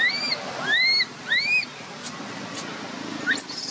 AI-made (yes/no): no